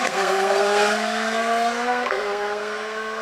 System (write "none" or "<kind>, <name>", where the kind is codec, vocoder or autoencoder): codec, SNAC